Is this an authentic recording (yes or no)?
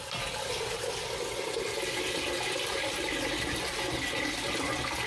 yes